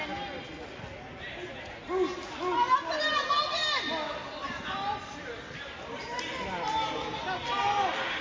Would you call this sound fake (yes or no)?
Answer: no